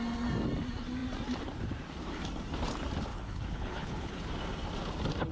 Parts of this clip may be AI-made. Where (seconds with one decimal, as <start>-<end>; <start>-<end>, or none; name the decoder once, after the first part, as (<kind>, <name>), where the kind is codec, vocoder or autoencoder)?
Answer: 3.1-4.3 (codec, HILCodec)